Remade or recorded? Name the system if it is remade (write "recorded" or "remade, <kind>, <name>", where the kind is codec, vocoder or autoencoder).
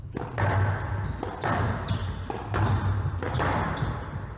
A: recorded